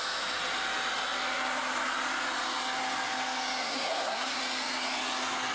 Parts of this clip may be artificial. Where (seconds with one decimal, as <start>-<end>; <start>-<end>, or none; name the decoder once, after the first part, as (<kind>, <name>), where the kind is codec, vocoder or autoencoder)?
3.6-4.4 (codec, SNAC)